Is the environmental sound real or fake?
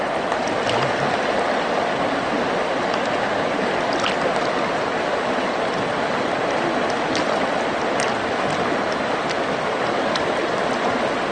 real